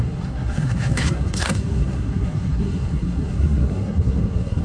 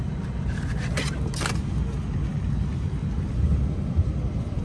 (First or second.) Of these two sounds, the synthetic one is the first